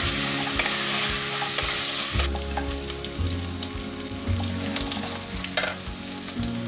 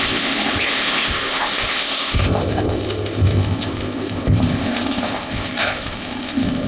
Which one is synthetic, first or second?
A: second